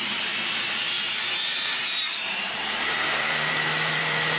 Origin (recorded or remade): remade